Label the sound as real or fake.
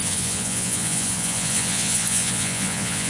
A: fake